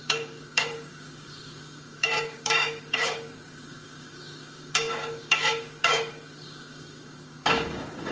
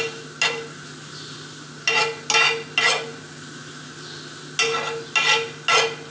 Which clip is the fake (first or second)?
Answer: first